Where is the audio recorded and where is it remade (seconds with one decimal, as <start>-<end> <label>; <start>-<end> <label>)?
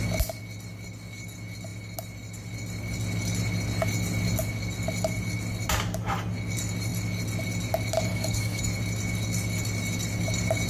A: 0.0-8.1 recorded; 8.1-8.6 remade; 8.6-10.7 recorded